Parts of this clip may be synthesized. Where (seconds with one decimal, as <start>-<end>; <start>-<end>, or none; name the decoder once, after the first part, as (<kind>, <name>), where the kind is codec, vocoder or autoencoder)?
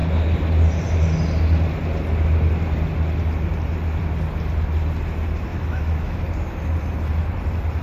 5.5-6.2 (autoencoder, DAC-VAE)